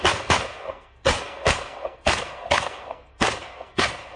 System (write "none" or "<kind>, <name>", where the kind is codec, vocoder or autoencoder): codec, SNAC